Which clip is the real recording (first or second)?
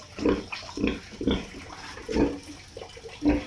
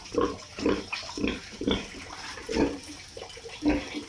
first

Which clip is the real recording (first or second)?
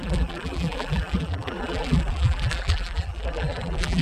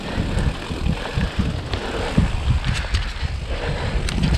second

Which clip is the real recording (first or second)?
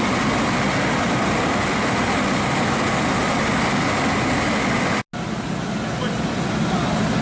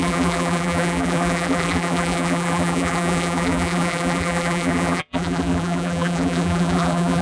first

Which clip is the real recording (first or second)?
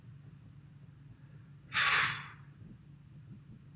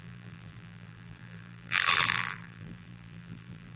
first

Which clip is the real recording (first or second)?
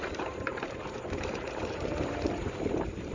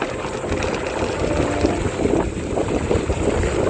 second